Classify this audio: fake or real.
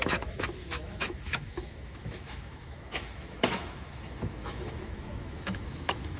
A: fake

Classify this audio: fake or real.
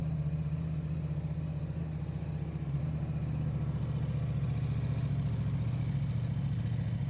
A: real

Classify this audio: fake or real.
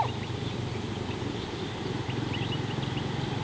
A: real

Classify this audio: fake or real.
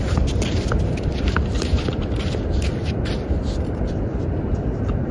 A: fake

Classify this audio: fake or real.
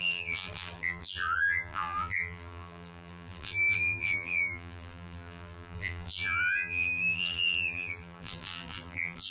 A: fake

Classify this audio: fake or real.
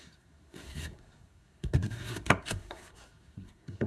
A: fake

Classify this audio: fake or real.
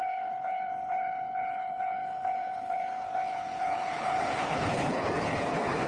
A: fake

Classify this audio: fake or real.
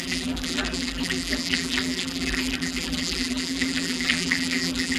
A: fake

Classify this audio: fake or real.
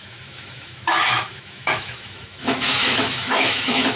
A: fake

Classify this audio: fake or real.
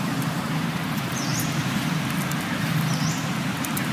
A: fake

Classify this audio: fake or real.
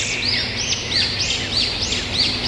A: real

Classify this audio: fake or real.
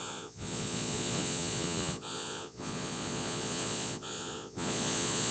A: fake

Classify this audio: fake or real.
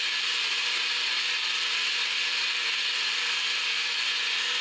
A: real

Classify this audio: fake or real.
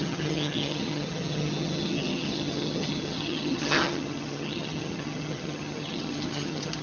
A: fake